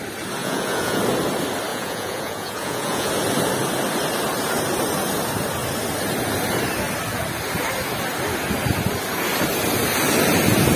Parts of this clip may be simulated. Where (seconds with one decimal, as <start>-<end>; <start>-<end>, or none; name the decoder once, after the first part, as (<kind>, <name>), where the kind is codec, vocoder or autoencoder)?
0.4-1.0 (vocoder, Vocos); 1.7-3.1